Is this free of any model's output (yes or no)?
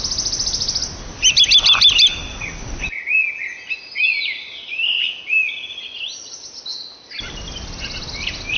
yes